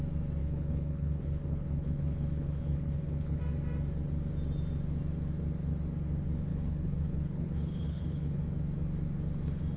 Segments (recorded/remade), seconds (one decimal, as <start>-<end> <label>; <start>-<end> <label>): 0.0-0.4 recorded; 0.4-3.4 remade; 3.4-6.5 recorded; 6.5-8.4 remade; 8.4-9.8 recorded

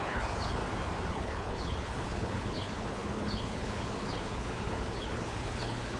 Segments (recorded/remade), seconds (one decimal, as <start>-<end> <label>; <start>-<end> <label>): 0.0-0.6 remade; 0.6-1.1 recorded; 1.1-6.0 remade

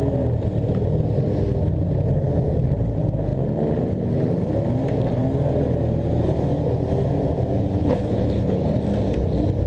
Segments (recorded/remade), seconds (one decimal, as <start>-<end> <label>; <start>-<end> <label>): 0.0-7.8 recorded; 7.8-8.7 remade; 8.7-9.7 recorded

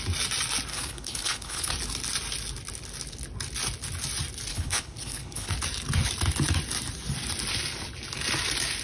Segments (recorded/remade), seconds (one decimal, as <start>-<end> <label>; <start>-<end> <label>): 0.0-0.7 recorded; 0.7-1.7 remade; 1.7-4.5 recorded; 4.5-5.5 remade; 5.5-8.8 recorded

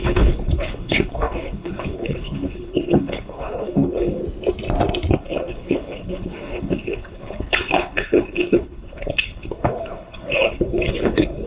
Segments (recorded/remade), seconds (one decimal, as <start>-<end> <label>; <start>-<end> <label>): 0.0-4.2 remade; 4.2-5.1 recorded; 5.1-11.5 remade

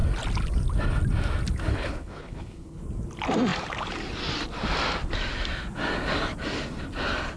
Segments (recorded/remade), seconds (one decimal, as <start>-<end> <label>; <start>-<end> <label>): 0.0-1.7 recorded; 1.7-2.8 remade; 2.8-7.4 recorded